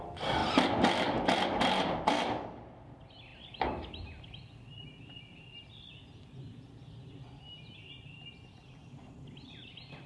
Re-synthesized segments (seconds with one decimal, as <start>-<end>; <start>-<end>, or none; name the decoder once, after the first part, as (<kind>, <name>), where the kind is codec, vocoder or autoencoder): none